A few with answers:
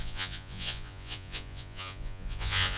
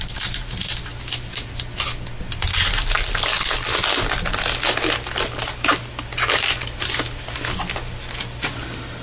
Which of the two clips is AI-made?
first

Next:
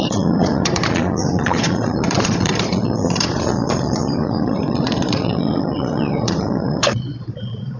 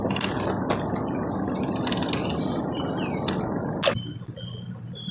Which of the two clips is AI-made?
first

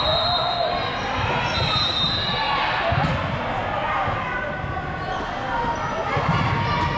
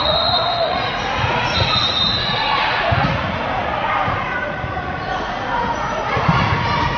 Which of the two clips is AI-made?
second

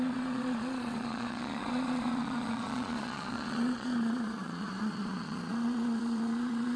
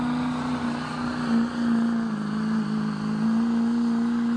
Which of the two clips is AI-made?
first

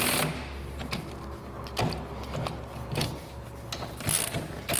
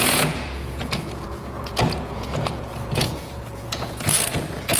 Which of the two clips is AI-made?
second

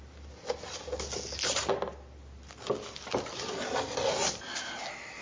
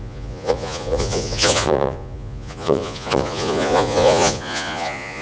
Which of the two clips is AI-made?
second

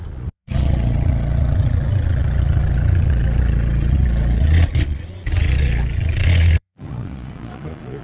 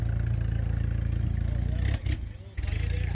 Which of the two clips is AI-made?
first